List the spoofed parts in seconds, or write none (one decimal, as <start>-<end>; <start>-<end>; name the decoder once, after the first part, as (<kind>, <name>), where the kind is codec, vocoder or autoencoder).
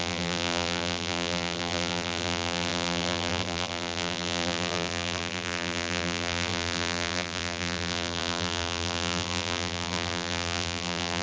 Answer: 0.0-11.2 (vocoder, BigVGAN v2)